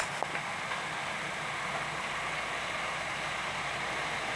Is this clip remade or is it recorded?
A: recorded